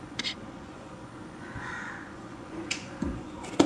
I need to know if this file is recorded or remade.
remade